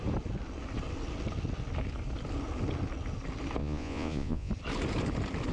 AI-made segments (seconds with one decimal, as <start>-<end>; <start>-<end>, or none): 3.6-4.5

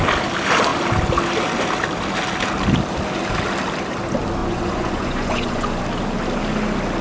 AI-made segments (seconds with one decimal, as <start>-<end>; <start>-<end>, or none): 4.4-5.8

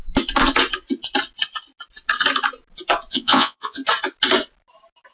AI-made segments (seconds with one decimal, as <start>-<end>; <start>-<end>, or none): 3.1-3.8

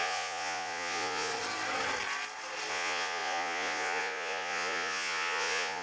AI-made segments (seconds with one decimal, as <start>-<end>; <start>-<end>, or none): 0.0-1.3; 2.7-5.8

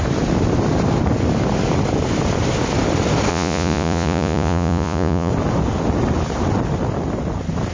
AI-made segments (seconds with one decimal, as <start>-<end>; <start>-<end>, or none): 3.3-5.3